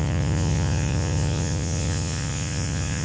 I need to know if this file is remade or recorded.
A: remade